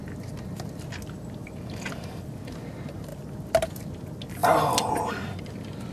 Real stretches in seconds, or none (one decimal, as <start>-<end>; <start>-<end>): 0.0-5.9